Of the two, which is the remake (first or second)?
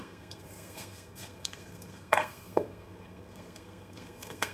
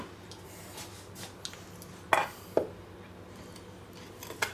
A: first